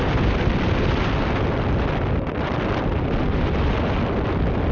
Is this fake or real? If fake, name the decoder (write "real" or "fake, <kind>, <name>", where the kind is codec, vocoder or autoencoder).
real